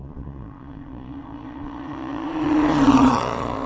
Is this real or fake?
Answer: fake